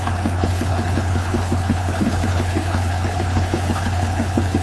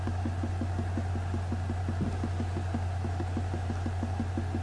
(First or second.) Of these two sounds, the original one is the second